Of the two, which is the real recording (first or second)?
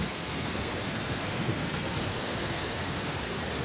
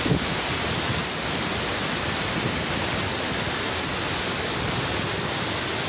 second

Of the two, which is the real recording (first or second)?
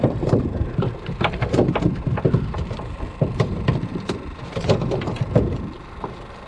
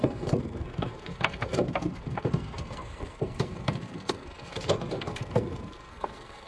first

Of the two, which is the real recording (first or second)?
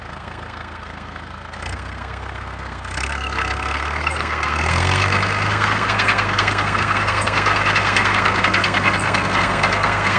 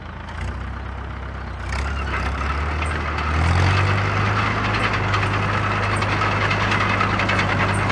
second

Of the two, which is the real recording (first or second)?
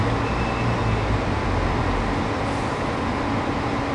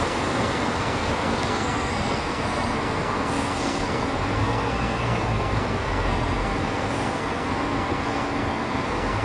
first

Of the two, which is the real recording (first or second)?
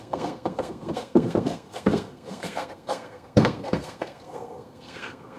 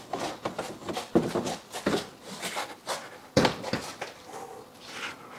second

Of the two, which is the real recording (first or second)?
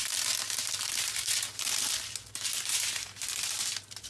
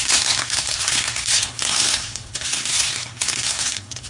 first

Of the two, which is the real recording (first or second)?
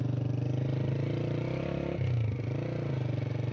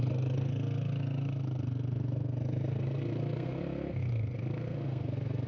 first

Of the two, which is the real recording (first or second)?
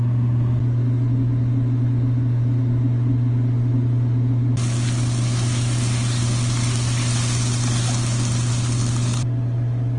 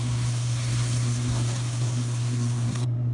first